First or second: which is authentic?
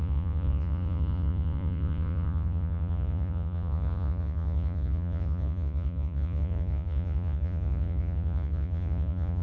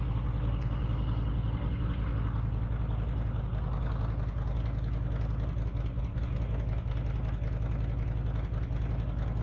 second